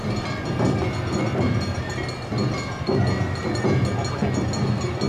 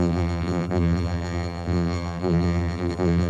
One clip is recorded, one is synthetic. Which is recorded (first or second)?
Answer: first